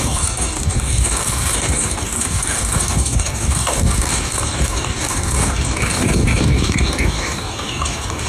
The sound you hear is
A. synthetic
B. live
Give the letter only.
A